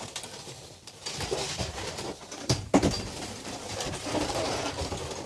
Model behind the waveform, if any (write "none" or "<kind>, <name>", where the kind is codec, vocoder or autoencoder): vocoder, BigVGAN v2